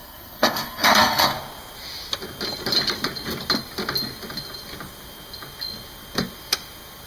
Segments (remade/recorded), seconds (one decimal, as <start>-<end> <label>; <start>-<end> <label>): 0.0-1.3 remade; 1.3-7.1 recorded

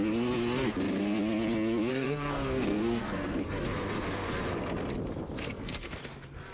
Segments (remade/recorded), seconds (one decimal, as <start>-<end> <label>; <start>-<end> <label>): 0.0-1.9 recorded; 1.9-3.4 remade; 3.4-5.4 recorded; 5.4-6.0 remade; 6.0-6.5 recorded

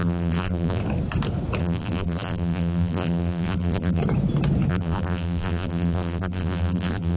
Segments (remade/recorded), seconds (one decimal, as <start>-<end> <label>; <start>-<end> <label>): 0.0-0.8 remade; 0.8-1.6 recorded; 1.6-4.0 remade; 4.0-4.7 recorded; 4.7-7.2 remade

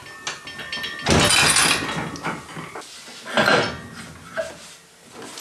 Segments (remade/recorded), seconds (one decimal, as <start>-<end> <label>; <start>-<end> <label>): 0.0-5.4 recorded

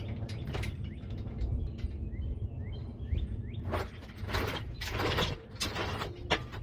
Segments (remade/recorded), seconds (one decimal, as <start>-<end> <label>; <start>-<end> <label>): 0.0-6.6 recorded

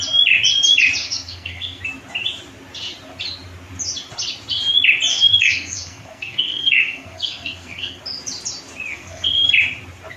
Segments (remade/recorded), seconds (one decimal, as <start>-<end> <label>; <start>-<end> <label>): 0.0-1.0 recorded; 1.0-1.8 remade; 1.8-5.1 recorded; 5.1-8.0 remade; 8.0-8.9 recorded; 8.9-9.5 remade; 9.5-10.2 recorded

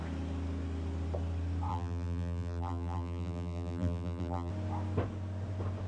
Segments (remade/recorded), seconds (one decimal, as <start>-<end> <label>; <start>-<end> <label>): 0.0-1.7 recorded; 1.7-4.5 remade; 4.5-5.9 recorded